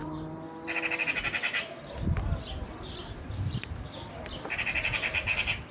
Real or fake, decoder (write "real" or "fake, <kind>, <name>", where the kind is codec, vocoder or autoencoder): real